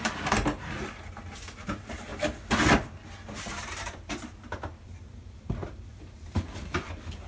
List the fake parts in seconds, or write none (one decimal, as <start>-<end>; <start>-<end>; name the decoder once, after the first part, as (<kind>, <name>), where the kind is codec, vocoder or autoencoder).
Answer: 0.0-2.1 (vocoder, BigVGAN v2); 3.5-7.3